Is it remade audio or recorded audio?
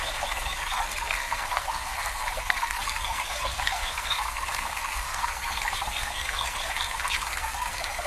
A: remade